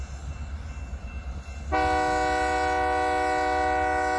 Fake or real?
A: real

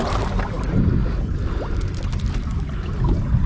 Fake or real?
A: real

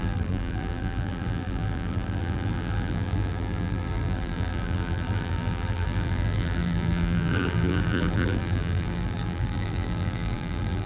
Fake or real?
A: fake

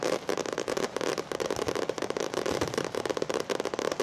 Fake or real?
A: fake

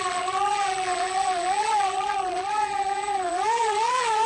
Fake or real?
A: fake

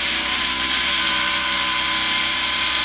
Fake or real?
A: fake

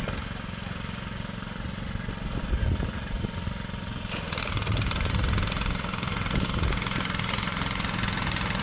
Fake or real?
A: fake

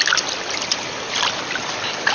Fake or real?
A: fake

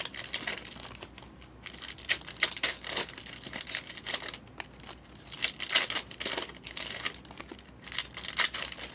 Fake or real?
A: real